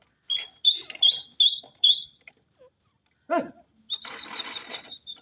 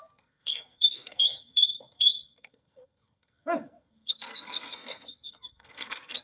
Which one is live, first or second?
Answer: first